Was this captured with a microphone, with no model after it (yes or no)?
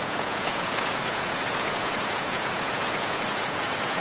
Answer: no